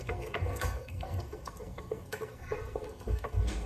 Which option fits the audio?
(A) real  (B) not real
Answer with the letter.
B